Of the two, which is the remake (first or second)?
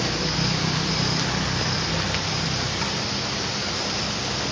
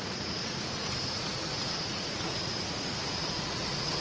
second